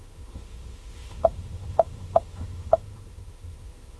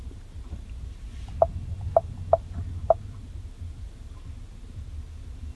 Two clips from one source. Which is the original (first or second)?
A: second